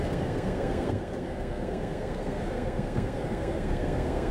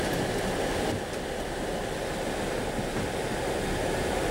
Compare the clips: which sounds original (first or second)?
second